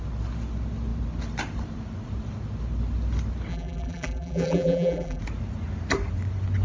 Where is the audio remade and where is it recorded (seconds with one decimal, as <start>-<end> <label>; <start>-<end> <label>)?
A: 0.0-3.5 recorded; 3.5-5.2 remade; 5.2-6.6 recorded